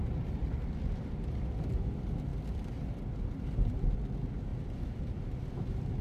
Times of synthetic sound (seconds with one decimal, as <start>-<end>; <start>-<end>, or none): 0.4-1.7; 2.3-3.2; 4.5-5.0